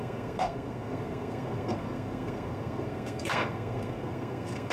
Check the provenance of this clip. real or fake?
fake